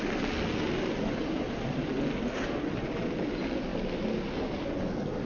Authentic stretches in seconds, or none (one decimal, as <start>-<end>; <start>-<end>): 0.0-5.3

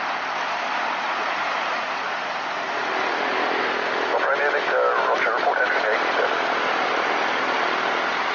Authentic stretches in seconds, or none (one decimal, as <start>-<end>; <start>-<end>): 0.0-8.3

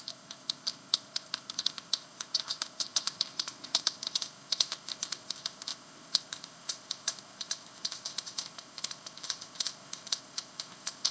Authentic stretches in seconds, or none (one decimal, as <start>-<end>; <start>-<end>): none